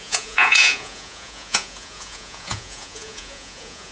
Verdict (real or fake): fake